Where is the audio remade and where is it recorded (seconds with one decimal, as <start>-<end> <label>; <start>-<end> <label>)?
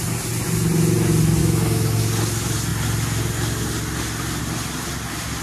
0.0-1.4 recorded; 1.4-2.0 remade; 2.0-5.4 recorded